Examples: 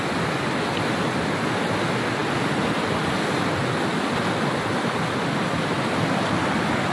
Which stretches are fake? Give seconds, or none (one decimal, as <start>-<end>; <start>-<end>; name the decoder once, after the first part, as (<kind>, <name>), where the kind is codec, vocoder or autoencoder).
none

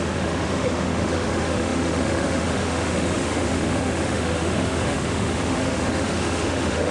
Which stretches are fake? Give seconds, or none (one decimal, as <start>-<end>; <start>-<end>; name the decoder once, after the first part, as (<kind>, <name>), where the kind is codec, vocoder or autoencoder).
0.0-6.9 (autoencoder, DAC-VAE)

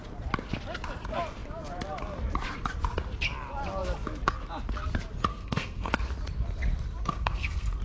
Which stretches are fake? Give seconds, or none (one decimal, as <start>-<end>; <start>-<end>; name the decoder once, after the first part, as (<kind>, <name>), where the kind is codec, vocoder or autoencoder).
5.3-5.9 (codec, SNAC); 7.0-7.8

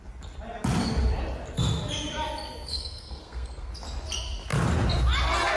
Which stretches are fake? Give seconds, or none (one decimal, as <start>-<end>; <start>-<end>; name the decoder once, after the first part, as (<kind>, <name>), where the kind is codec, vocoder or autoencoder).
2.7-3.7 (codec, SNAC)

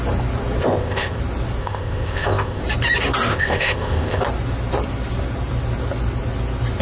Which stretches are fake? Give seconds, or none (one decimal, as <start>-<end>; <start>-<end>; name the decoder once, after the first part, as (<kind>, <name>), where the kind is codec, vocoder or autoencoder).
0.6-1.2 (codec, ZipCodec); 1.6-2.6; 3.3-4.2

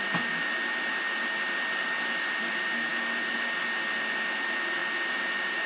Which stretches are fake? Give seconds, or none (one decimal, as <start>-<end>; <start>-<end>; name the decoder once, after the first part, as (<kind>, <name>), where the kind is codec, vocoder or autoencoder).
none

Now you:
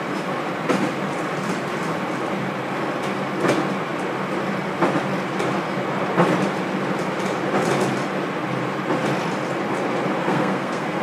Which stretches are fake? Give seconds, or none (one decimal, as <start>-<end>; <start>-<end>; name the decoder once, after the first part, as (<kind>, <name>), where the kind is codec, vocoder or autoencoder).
10.2-11.0 (codec, SNAC)